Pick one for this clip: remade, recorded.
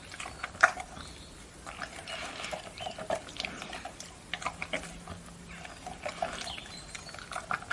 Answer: recorded